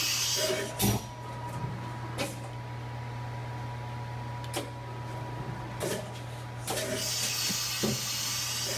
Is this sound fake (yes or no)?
no